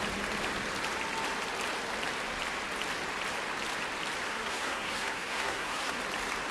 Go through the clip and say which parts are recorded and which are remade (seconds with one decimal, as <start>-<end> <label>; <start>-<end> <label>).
0.0-4.3 recorded; 4.3-6.0 remade; 6.0-6.5 recorded